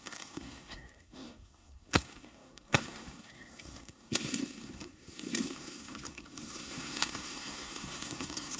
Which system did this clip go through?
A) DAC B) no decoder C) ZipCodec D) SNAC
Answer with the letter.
D